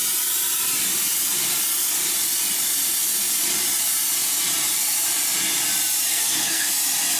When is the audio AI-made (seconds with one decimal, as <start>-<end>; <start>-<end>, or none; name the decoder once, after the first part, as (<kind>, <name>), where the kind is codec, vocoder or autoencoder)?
6.1-6.7 (codec, SNAC)